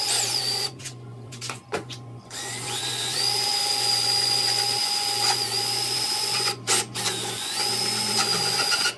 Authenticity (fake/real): fake